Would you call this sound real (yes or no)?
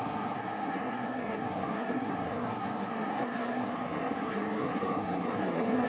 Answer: no